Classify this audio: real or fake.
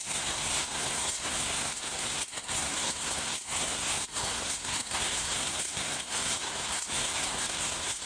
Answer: fake